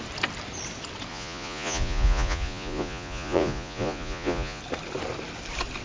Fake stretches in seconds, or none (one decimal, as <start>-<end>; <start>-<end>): 1.1-4.6